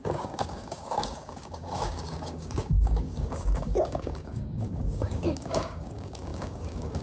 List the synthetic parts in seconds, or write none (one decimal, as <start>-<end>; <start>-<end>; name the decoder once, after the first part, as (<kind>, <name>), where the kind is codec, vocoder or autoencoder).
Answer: 0.0-7.0 (codec, DAC)